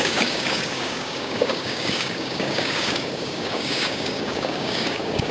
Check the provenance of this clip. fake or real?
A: fake